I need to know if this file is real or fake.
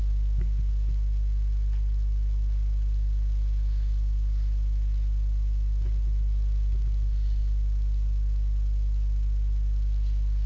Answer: real